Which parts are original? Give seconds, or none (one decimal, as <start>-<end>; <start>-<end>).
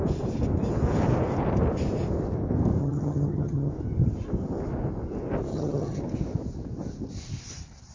0.0-2.8; 3.7-5.5; 6.0-7.9